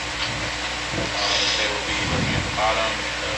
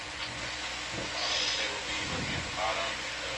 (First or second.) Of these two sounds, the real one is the first